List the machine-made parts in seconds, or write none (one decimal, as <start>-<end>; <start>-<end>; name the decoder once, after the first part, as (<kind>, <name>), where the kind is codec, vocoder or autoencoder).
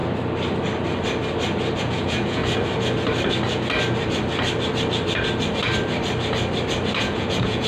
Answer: 1.8-2.4 (vocoder, Vocos); 7.0-7.7